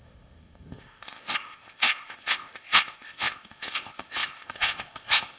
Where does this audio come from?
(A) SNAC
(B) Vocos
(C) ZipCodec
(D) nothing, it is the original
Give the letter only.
C